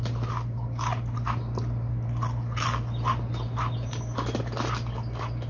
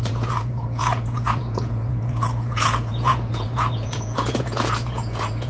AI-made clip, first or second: second